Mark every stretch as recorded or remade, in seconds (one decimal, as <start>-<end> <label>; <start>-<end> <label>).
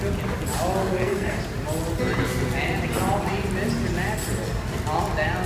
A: 0.0-0.8 recorded; 0.8-1.4 remade; 1.4-5.5 recorded